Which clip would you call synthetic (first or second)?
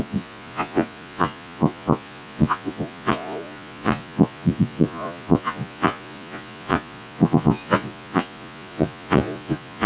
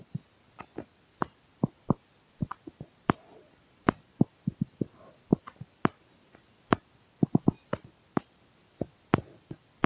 first